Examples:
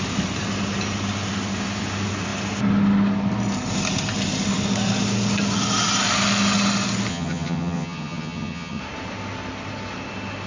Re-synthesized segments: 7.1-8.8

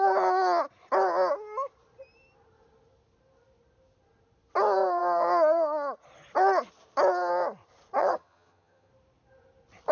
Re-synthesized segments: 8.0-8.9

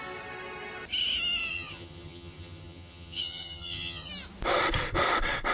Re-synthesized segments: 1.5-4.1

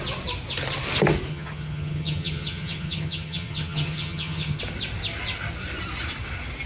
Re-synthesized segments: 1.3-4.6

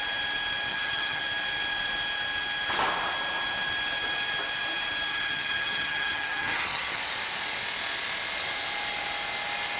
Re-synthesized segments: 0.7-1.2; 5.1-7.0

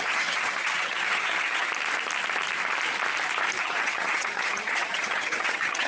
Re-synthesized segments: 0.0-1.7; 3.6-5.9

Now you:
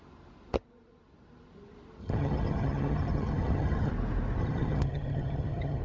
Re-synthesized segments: 2.0-3.9; 4.4-5.8

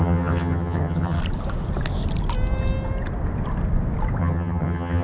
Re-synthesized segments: 0.0-1.2; 4.2-5.0